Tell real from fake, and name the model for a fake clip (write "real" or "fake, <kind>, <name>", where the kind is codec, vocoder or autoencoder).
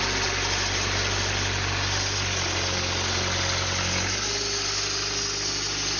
real